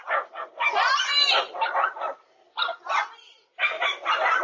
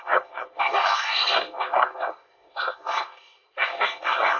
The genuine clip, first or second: first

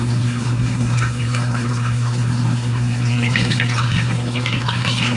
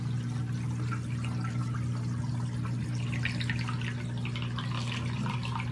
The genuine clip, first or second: second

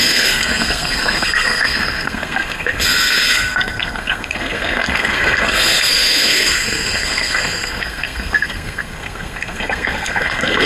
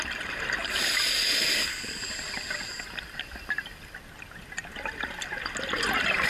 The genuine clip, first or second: second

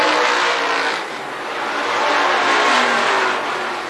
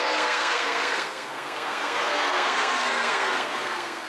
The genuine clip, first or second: first